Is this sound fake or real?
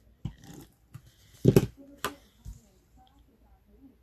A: real